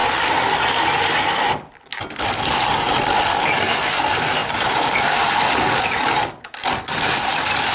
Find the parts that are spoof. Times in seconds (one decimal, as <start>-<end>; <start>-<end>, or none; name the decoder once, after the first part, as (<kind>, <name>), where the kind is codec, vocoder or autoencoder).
none